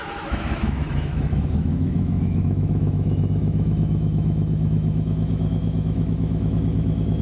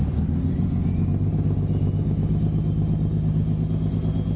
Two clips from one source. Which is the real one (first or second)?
second